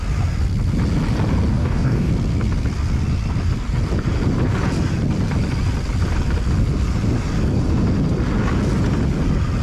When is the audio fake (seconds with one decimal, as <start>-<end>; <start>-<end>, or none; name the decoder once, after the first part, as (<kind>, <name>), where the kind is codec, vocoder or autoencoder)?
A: 1.5-2.1 (codec, DAC)